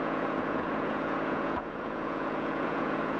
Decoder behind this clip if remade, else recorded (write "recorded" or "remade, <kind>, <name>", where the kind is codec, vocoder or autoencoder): remade, vocoder, Vocos